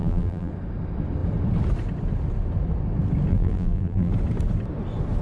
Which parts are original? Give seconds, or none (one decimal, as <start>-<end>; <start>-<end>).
0.5-3.3; 4.1-5.2